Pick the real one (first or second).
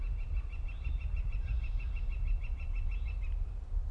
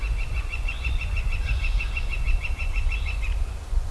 first